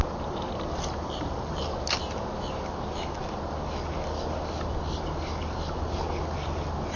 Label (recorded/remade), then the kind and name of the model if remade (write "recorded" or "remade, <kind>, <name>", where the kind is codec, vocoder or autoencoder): recorded